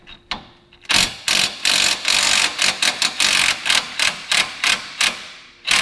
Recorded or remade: recorded